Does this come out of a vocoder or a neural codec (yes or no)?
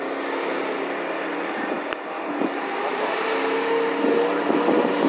no